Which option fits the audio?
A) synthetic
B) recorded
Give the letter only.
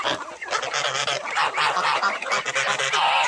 B